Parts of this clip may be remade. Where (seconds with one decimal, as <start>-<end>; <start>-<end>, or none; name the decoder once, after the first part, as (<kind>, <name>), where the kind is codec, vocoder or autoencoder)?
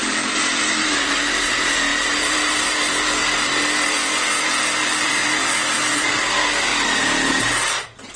0.0-6.7 (vocoder, BigVGAN v2)